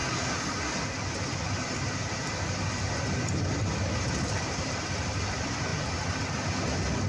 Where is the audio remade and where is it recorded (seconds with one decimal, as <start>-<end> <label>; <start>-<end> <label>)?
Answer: 0.0-1.1 recorded; 1.1-7.1 remade